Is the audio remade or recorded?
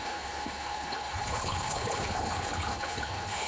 remade